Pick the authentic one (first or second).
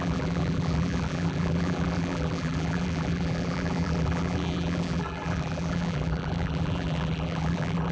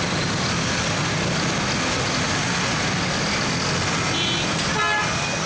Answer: second